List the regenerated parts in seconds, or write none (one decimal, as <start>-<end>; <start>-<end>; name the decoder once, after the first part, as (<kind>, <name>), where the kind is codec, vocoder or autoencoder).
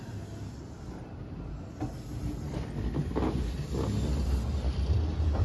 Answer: none